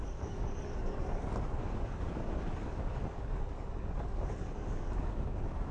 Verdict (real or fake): fake